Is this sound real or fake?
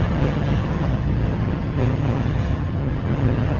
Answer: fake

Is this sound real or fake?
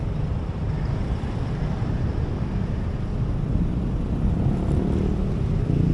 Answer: real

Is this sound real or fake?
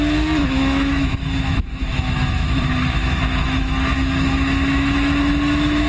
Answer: fake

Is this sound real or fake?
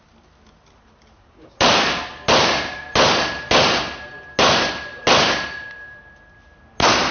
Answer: real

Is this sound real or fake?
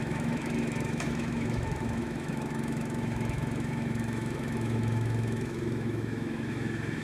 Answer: fake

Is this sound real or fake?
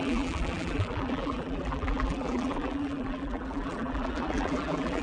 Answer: fake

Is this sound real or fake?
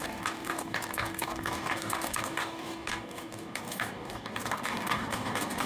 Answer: fake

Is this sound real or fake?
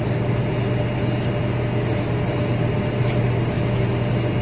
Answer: real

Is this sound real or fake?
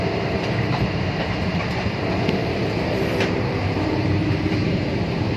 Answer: fake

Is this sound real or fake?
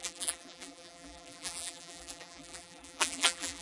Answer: fake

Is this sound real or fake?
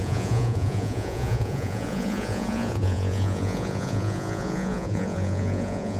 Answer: fake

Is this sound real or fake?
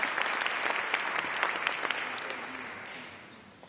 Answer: real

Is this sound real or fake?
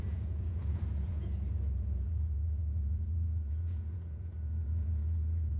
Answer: fake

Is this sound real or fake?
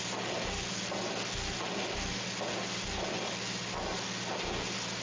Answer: real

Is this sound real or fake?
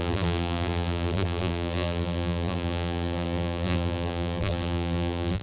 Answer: fake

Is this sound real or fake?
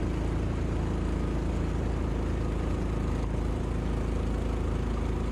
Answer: real